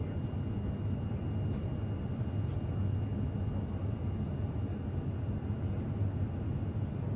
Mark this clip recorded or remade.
recorded